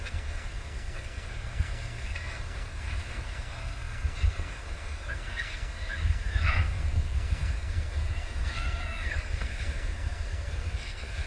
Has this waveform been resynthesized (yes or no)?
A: yes